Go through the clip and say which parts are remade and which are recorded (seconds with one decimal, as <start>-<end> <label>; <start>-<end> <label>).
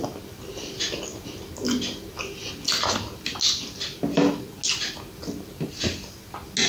0.0-6.7 recorded